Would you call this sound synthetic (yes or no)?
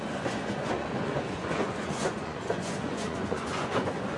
yes